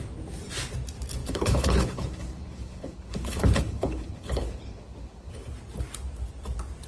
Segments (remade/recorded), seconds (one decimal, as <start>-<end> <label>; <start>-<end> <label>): 0.0-1.2 recorded; 1.2-5.3 remade; 5.3-6.9 recorded